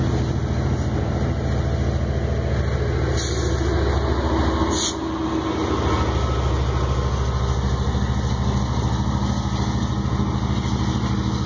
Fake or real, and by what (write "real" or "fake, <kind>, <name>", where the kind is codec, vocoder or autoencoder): real